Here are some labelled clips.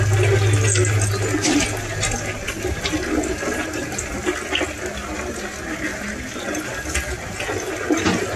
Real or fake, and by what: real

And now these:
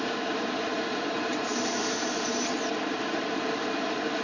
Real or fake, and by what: fake, vocoder, BigVGAN v2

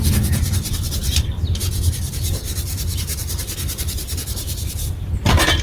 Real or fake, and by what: fake, vocoder, BigVGAN v2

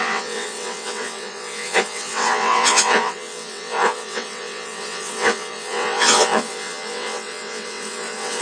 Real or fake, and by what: fake, vocoder, WaveNeXt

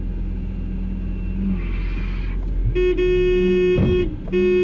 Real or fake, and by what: real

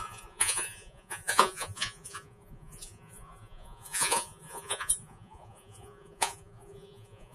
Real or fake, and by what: fake, vocoder, Vocos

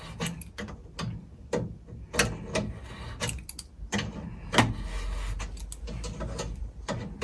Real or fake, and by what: real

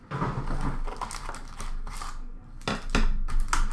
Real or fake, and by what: real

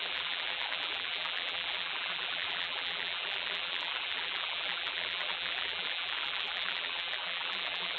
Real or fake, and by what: fake, vocoder, BigVGAN v2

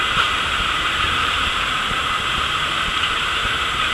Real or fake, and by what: fake, vocoder, BigVGAN v2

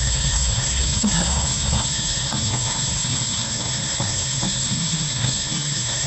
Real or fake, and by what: fake, codec, SNAC